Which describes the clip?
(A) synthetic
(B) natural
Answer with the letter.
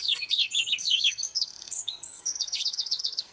A